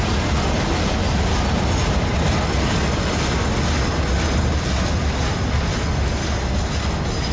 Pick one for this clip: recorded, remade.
recorded